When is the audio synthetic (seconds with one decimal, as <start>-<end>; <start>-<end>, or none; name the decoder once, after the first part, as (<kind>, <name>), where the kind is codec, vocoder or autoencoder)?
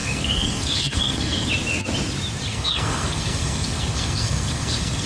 0.0-1.5 (codec, SNAC); 2.5-5.1